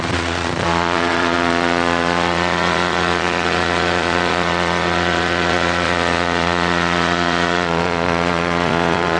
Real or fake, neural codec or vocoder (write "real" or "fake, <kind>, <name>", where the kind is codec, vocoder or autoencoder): fake, vocoder, Vocos